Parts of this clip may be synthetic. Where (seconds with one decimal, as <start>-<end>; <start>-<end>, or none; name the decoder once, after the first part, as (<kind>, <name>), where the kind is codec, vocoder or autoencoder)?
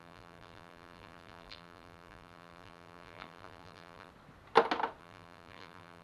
0.0-4.1 (vocoder, BigVGAN v2); 5.0-6.0